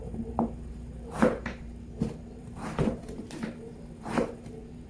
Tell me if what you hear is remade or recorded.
remade